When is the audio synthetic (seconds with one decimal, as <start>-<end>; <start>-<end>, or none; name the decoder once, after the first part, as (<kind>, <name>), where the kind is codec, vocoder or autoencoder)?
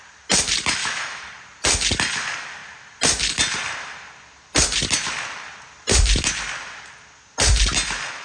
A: 0.8-1.3 (autoencoder, DAC-VAE)